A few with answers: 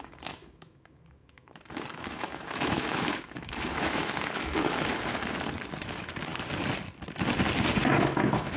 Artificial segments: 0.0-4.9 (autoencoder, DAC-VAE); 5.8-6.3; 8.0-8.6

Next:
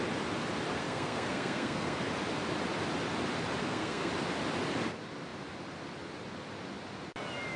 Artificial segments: 0.8-2.0 (codec, SNAC); 3.6-4.1

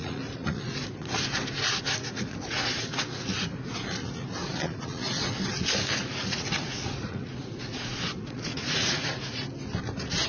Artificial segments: 0.0-1.2 (vocoder, Vocos); 2.0-5.3; 6.0-9.4